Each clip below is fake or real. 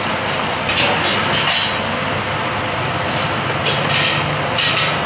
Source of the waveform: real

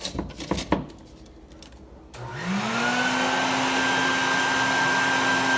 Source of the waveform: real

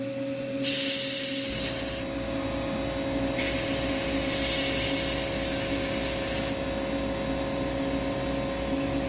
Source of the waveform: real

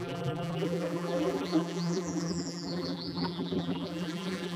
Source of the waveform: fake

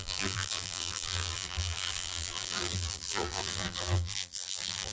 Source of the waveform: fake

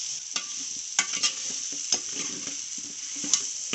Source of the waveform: real